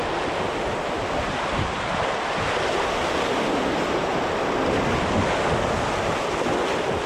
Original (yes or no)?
yes